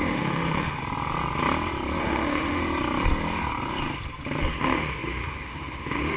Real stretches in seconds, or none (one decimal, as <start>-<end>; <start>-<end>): 0.8-2.0; 2.6-4.4